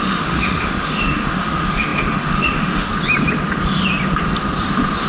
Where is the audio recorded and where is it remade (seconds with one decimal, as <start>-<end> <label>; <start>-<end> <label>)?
0.0-2.9 remade; 2.9-5.1 recorded